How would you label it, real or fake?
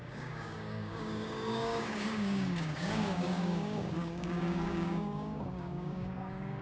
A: fake